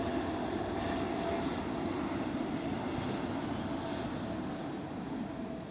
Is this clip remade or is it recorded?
recorded